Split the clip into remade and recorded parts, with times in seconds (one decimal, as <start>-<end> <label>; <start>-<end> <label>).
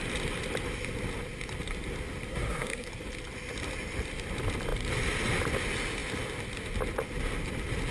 0.0-2.3 recorded; 2.3-2.9 remade; 2.9-7.9 recorded